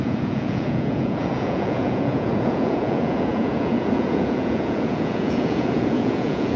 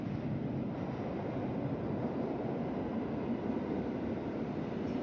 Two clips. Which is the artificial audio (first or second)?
first